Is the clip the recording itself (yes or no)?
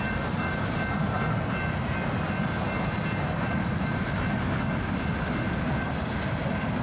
yes